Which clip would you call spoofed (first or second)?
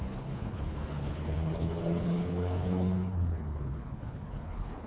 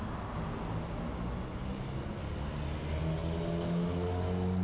first